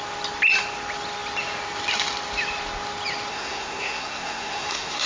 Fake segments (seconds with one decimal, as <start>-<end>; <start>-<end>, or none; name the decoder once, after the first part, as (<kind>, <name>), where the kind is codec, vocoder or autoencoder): 3.3-5.1 (codec, SNAC)